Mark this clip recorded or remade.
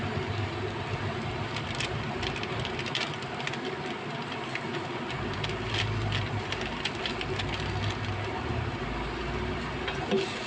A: recorded